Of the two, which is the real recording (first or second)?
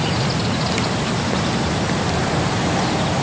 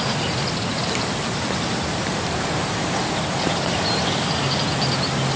first